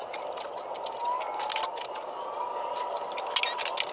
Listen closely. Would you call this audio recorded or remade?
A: recorded